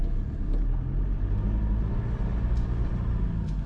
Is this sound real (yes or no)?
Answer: yes